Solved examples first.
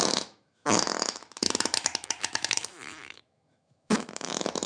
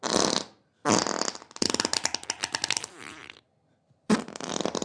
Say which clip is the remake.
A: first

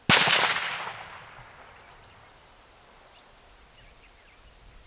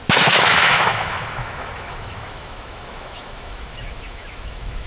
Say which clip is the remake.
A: second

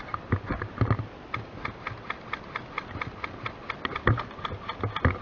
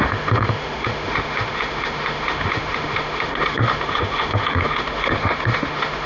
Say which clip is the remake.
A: second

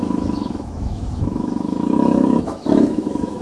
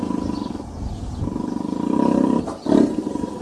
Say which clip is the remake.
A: first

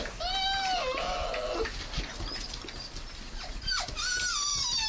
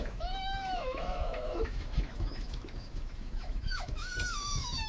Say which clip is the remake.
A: second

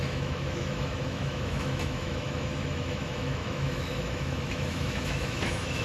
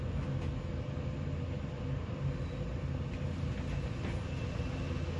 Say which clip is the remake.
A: first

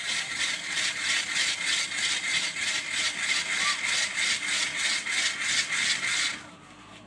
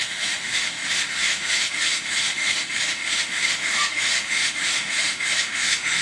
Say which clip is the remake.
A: second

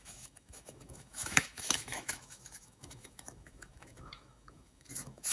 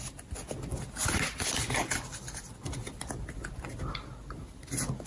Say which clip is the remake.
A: first